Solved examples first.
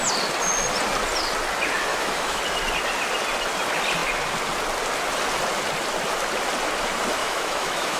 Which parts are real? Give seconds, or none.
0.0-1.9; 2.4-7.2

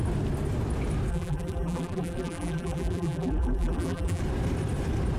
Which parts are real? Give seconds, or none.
0.0-1.1; 4.2-5.2

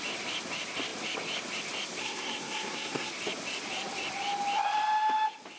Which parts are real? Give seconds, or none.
0.0-2.0; 3.1-5.6

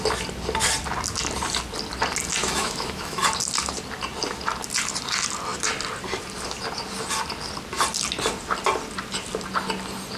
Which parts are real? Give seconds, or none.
0.0-2.4; 3.2-10.2

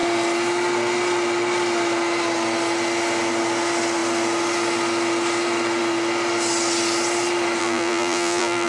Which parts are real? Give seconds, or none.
0.0-7.6

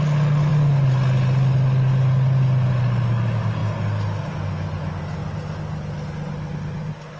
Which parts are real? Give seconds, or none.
0.0-7.2